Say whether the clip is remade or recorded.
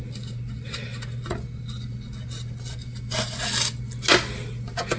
recorded